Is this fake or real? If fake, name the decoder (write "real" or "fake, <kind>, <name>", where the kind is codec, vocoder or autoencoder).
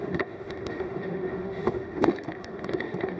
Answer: fake, autoencoder, DAC-VAE